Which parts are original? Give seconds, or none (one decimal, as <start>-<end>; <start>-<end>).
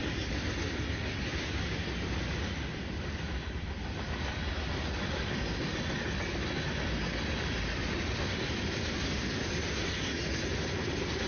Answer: 0.0-1.3; 4.5-7.8; 10.0-11.3